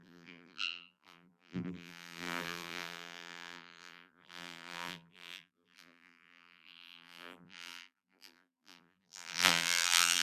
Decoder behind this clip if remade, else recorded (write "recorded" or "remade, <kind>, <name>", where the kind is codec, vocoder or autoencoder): remade, vocoder, BigVGAN v2